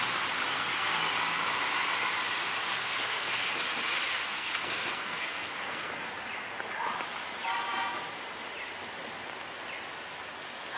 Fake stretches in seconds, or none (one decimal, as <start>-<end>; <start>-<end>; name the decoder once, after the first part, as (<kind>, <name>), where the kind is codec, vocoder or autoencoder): 0.5-1.0 (codec, SNAC); 2.7-3.5; 4.3-5.9